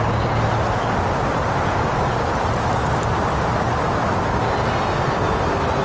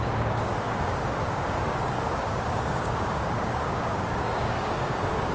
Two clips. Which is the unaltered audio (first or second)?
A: first